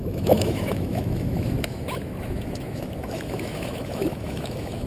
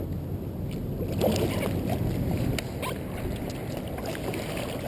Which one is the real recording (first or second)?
second